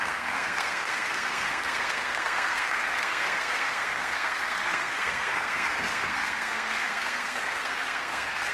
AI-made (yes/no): yes